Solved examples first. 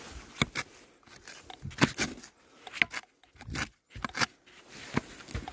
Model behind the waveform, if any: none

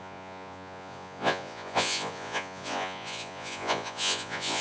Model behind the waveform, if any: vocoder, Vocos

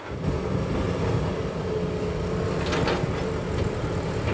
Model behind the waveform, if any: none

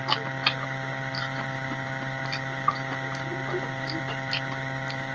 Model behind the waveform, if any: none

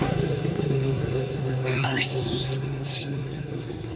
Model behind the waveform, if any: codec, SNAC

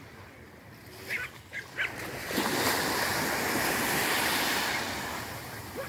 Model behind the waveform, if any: none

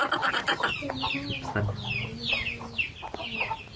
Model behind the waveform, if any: none